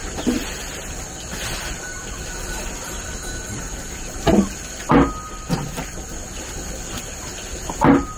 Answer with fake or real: real